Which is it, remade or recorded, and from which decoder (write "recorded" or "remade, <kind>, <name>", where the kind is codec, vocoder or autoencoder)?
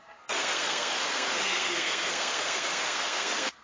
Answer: remade, codec, SNAC